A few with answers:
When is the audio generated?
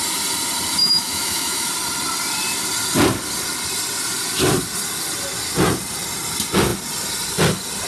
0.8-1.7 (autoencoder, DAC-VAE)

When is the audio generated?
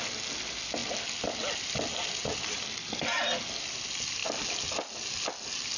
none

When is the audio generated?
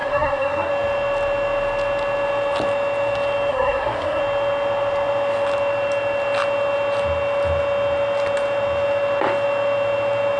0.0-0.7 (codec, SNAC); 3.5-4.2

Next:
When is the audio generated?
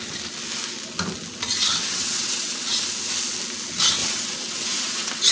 1.6-2.8 (vocoder, WaveNeXt); 4.0-5.3